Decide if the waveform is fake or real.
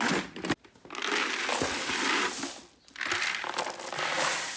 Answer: real